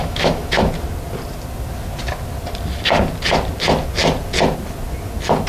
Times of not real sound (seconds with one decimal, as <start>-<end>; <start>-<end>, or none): 0.0-0.7